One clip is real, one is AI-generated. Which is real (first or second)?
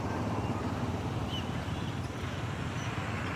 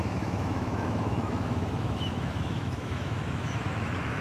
first